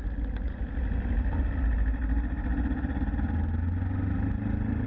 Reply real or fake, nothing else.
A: real